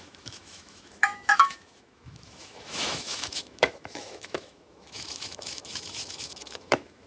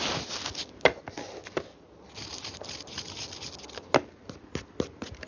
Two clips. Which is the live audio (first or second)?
second